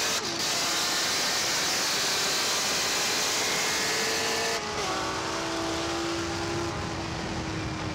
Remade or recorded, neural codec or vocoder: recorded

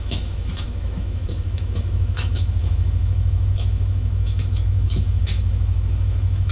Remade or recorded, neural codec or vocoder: remade, autoencoder, DAC-VAE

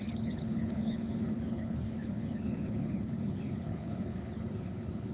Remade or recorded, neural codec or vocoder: remade, codec, HILCodec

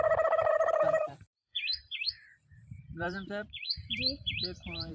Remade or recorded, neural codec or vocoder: remade, vocoder, BigVGAN v2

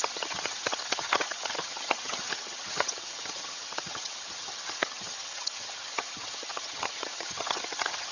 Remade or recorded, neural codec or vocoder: remade, vocoder, HiFi-GAN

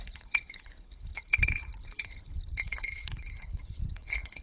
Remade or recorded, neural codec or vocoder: remade, codec, HILCodec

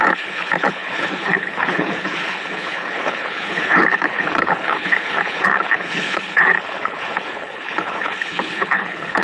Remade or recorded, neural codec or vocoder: remade, codec, HILCodec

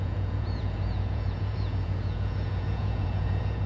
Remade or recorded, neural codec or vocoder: remade, vocoder, Vocos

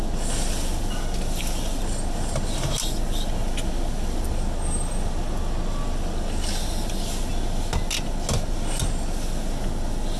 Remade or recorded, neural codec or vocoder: recorded